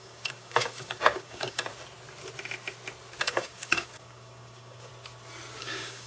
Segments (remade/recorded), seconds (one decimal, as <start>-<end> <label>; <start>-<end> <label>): 0.0-1.7 remade; 1.7-3.2 recorded; 3.2-4.9 remade; 4.9-5.6 recorded; 5.6-6.1 remade

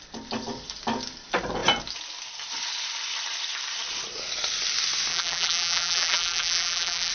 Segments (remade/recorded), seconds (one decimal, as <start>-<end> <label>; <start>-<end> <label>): 0.0-5.1 recorded; 5.1-7.1 remade

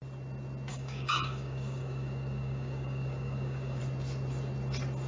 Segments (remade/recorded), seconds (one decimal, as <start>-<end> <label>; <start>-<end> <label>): 0.0-0.7 recorded; 0.7-3.8 remade; 3.8-5.1 recorded

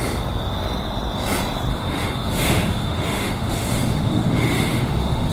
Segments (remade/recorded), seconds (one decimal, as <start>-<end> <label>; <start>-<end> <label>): 0.0-1.7 recorded; 1.7-5.3 remade

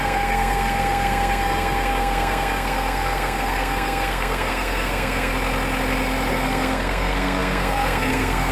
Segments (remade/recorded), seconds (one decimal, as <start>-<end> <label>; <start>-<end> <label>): 0.0-5.3 remade; 5.3-6.3 recorded; 6.3-8.5 remade

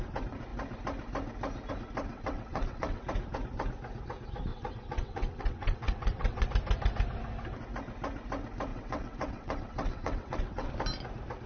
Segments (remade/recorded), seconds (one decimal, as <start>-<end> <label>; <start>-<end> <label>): 0.0-2.1 recorded; 2.1-3.0 remade; 3.0-4.5 recorded; 4.5-6.5 remade; 6.5-8.7 recorded; 8.7-10.7 remade; 10.7-11.5 recorded

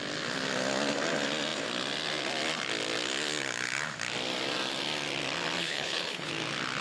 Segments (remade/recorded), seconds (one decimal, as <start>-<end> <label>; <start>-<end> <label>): 0.0-5.6 recorded; 5.6-6.3 remade; 6.3-6.8 recorded